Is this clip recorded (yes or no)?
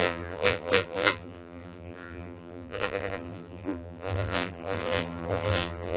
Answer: no